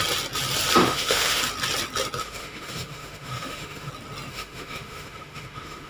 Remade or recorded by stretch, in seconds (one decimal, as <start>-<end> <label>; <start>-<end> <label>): 0.0-0.8 recorded; 0.8-1.4 remade; 1.4-2.2 recorded; 2.2-3.9 remade; 3.9-4.3 recorded; 4.3-5.9 remade